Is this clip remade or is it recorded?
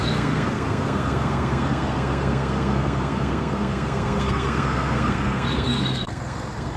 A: remade